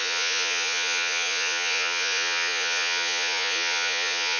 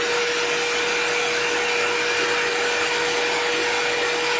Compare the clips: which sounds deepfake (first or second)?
first